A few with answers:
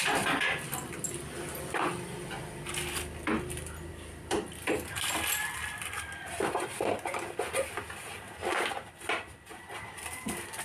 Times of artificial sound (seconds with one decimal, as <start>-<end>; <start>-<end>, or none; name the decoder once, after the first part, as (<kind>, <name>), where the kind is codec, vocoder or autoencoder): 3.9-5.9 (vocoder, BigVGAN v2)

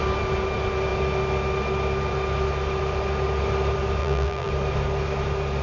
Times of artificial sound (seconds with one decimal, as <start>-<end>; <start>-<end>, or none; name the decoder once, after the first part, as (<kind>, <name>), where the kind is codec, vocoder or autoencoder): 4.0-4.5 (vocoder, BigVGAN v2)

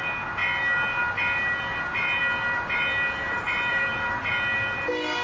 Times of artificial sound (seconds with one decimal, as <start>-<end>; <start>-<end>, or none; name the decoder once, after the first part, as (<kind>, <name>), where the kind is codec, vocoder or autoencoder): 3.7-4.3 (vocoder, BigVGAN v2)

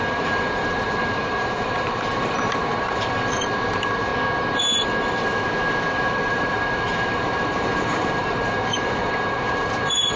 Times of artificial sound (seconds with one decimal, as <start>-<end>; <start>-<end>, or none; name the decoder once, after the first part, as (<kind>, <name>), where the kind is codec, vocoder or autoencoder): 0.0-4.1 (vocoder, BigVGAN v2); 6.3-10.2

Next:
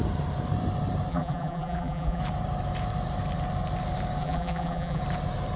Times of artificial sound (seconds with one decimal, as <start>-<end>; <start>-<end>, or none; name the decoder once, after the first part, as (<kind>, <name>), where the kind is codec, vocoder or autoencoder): 1.1-2.2 (vocoder, BigVGAN v2); 4.2-5.0